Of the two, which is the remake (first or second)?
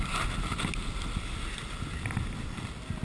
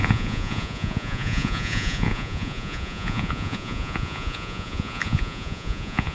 second